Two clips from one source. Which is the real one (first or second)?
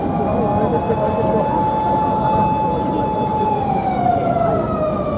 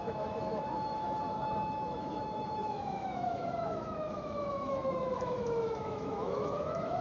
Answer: first